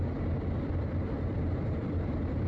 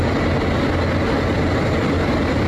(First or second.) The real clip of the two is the second